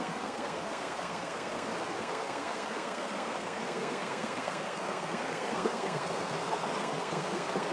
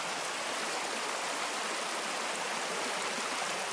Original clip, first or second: second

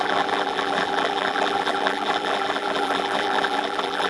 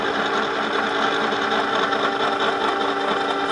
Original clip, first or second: second